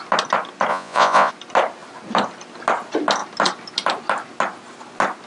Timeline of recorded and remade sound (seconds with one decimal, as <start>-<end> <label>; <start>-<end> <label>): 0.0-0.7 recorded; 0.7-1.3 remade; 1.3-5.3 recorded